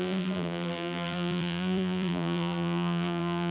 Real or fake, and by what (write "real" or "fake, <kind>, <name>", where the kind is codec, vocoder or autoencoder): fake, vocoder, BigVGAN v2